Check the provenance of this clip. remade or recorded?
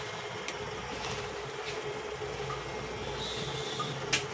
recorded